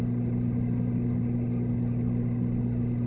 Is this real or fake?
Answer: real